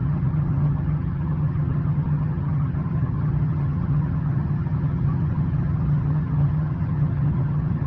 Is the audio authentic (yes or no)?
no